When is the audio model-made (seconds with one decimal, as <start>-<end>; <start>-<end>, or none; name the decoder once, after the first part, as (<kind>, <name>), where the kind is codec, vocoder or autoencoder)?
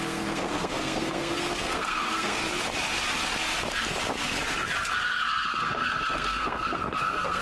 0.0-2.4 (codec, SNAC); 5.3-7.4